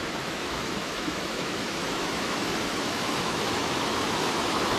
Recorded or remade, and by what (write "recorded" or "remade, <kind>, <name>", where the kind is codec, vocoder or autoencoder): remade, autoencoder, DAC-VAE